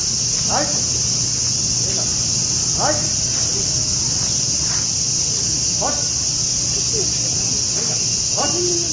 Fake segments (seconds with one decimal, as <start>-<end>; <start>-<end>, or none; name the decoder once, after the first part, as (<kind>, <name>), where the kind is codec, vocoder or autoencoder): none